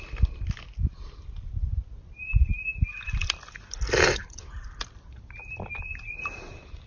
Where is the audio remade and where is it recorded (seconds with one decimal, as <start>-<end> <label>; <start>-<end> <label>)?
0.0-6.9 recorded